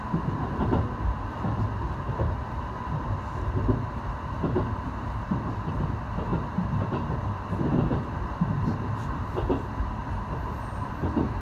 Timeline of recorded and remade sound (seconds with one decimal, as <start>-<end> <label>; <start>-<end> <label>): 0.0-11.4 recorded